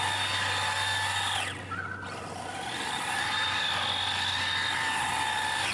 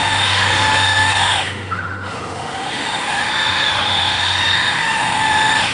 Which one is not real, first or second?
second